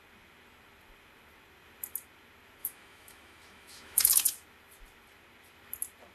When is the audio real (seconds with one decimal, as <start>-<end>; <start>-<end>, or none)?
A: 0.0-2.6; 4.1-6.1